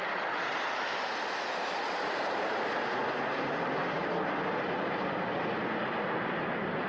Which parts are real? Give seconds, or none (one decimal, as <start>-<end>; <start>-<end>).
4.1-6.9